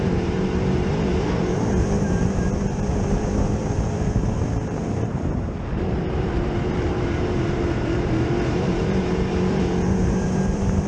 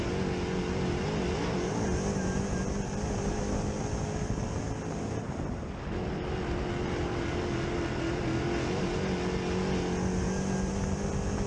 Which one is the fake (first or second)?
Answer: first